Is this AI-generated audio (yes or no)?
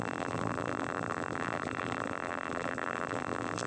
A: yes